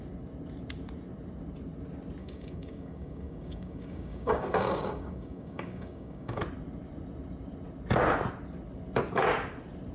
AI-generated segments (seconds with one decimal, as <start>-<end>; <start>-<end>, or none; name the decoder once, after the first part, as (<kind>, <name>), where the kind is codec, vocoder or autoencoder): 2.2-6.4 (codec, DAC)